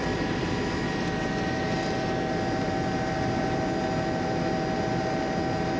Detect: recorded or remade recorded